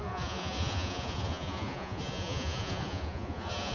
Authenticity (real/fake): fake